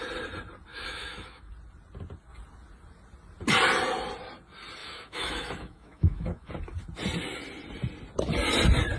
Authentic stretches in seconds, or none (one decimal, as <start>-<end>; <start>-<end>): 0.0-0.7; 1.5-4.8; 6.5-9.0